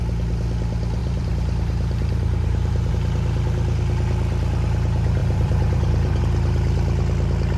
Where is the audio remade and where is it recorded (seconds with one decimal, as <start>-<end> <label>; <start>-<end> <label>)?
0.0-1.0 recorded; 1.0-2.9 remade; 2.9-5.2 recorded; 5.2-6.2 remade; 6.2-7.6 recorded